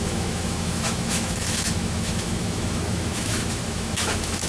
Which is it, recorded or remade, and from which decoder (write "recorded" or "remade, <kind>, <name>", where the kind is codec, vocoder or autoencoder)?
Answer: remade, autoencoder, DAC-VAE